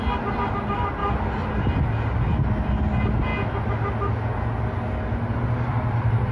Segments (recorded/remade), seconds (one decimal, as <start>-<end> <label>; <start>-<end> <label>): 0.0-6.3 recorded